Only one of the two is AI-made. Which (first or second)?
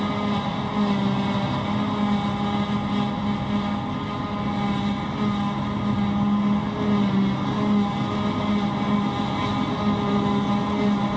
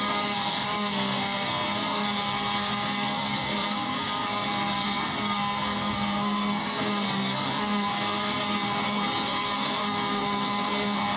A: second